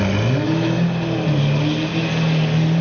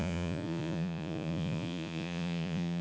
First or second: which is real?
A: first